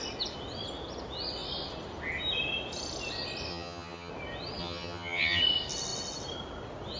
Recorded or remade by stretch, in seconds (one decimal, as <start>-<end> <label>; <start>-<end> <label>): 0.0-3.5 recorded; 3.5-4.1 remade; 4.1-4.6 recorded; 4.6-5.4 remade; 5.4-7.0 recorded